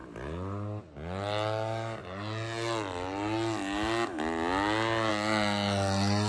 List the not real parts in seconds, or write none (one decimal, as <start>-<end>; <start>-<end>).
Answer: none